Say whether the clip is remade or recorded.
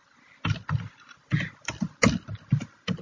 recorded